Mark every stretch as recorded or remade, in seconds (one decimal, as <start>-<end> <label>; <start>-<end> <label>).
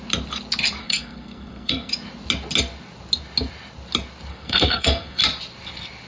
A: 0.0-0.8 recorded; 0.8-1.9 remade; 1.9-4.3 recorded; 4.3-5.2 remade; 5.2-6.1 recorded